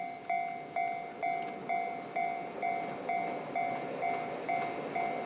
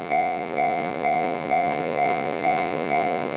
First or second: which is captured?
first